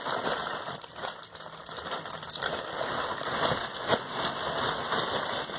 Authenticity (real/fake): real